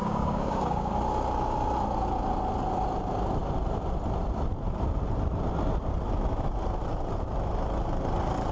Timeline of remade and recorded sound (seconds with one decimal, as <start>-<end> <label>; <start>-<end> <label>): 0.0-0.9 remade; 0.9-8.5 recorded